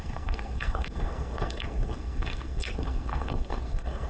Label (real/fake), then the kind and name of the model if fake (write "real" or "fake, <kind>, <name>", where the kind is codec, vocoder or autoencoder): fake, codec, SNAC